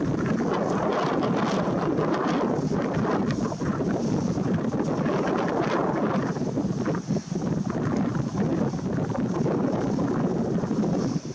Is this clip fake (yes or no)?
no